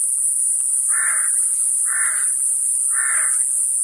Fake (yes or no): no